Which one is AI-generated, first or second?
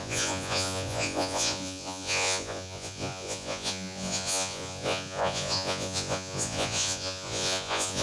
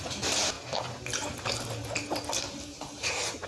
first